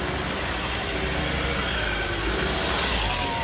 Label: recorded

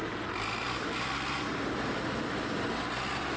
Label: recorded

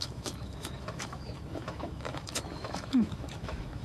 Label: remade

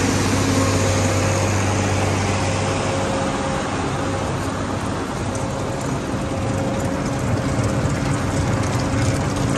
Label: recorded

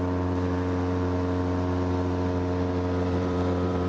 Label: remade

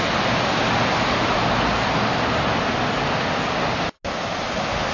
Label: recorded